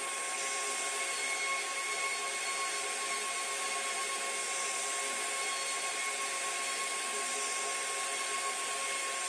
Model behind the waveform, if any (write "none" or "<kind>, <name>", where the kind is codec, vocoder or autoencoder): none